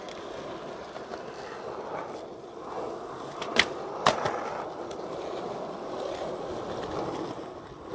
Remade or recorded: recorded